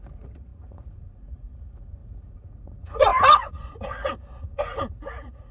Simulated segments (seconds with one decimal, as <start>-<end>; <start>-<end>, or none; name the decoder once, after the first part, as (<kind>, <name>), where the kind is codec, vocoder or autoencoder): 0.0-5.5 (vocoder, Vocos)